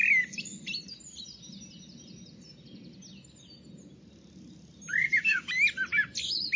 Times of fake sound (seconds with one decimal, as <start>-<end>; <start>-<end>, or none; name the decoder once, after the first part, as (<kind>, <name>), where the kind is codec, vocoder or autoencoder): 5.0-5.5 (codec, DAC)